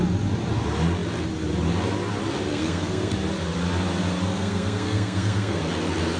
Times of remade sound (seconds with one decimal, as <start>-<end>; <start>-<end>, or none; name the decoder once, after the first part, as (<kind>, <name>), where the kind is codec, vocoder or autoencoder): 2.5-3.1 (codec, SNAC); 4.3-5.6